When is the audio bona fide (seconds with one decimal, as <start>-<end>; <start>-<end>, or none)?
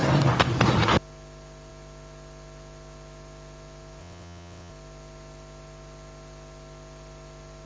0.0-4.0; 4.7-7.7